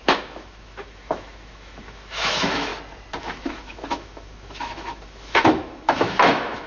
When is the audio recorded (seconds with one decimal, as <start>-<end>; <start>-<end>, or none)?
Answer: 2.7-3.2